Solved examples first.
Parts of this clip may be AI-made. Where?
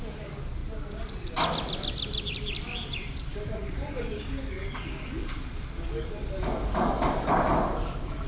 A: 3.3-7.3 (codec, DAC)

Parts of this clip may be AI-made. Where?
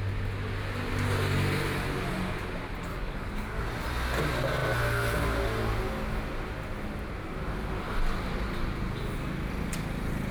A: 2.9-3.6 (codec, DAC)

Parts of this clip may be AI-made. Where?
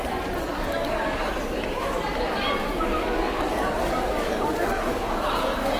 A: 0.5-1.2 (codec, DAC); 2.6-5.8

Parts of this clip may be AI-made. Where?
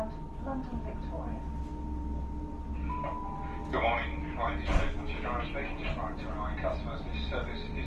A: none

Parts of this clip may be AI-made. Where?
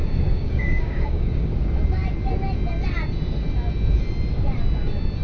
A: 0.0-1.5 (codec, DAC)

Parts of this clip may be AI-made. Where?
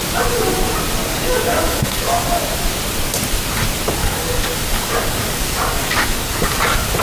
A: 1.0-2.2 (codec, DAC); 4.0-6.5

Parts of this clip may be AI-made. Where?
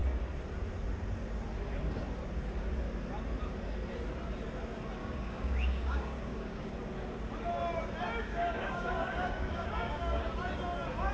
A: 5.0-6.7 (codec, DAC); 8.2-10.2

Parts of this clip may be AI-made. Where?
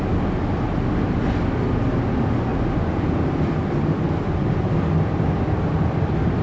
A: none